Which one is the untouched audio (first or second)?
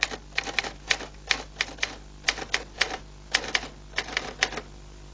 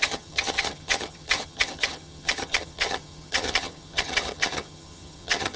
first